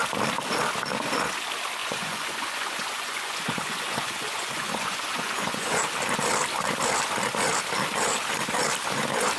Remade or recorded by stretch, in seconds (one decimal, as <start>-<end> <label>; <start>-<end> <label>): 0.0-1.8 recorded; 1.8-5.8 remade; 5.8-9.4 recorded